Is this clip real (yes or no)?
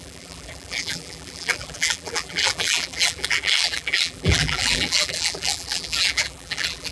no